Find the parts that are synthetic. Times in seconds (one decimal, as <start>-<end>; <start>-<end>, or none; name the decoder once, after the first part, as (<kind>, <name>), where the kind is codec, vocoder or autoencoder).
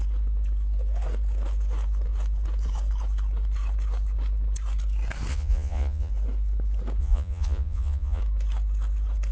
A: 5.3-6.1 (vocoder, Vocos); 7.0-8.2